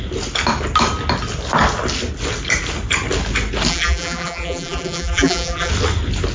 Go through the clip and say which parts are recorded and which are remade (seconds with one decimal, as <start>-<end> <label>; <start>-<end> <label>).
0.0-3.7 recorded; 3.7-5.7 remade; 5.7-6.3 recorded